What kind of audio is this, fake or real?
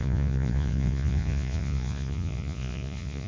fake